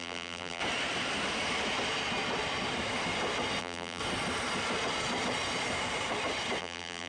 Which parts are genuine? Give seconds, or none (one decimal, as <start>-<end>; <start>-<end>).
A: 0.6-3.6; 4.0-6.6